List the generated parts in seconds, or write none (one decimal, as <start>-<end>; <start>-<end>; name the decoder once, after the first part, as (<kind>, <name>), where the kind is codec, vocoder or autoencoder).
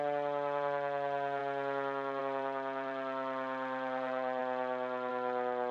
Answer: 0.0-1.4 (vocoder, BigVGAN v2); 2.2-5.7